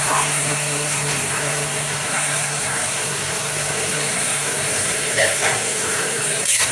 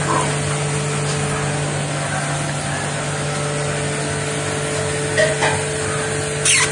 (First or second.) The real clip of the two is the second